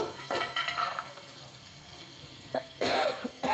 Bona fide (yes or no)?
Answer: no